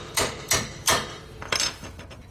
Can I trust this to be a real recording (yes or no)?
no